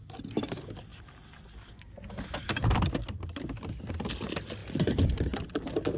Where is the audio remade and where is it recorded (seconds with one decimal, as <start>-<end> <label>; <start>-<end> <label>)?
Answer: 0.0-6.0 recorded